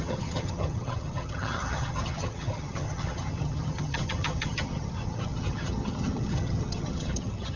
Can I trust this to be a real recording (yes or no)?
no